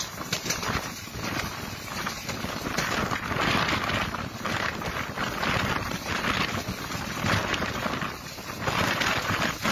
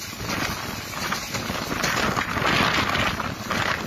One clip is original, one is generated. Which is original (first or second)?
second